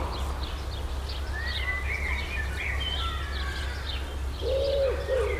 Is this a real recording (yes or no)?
yes